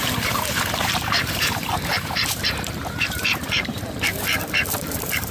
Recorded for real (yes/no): no